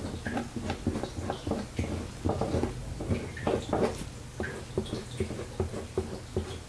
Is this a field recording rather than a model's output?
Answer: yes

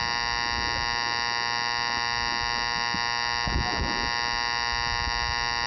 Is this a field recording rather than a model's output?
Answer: yes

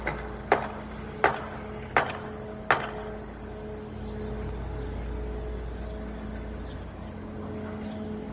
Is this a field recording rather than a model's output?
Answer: yes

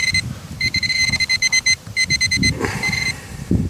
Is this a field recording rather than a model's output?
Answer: no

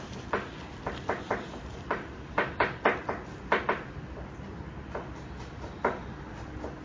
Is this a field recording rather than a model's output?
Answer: yes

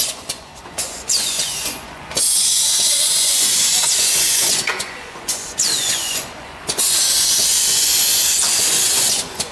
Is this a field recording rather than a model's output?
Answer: no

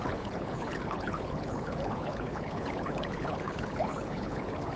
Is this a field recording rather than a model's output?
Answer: no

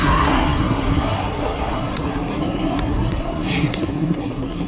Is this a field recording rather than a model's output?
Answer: no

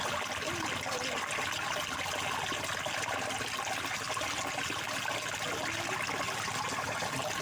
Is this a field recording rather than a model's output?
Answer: yes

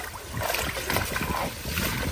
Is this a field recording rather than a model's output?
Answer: yes